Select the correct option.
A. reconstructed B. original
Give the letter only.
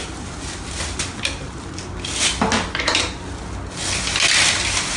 B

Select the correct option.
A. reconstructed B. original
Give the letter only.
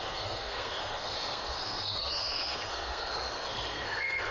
A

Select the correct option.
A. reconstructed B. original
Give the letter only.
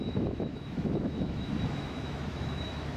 A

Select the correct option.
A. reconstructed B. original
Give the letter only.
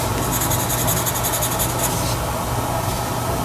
B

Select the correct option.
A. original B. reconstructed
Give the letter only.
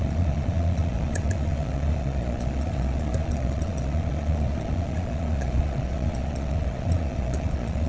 B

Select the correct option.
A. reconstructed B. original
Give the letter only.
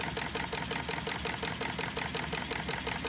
B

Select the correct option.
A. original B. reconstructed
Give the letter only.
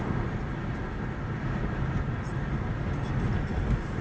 A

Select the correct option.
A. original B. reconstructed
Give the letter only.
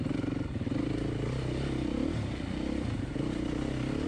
A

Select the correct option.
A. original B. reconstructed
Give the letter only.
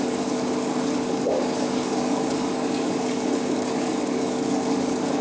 B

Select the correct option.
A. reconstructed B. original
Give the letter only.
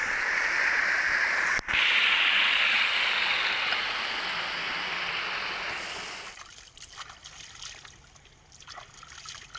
B